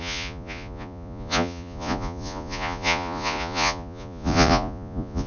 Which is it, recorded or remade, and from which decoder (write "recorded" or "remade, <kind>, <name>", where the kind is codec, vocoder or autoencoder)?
remade, vocoder, Vocos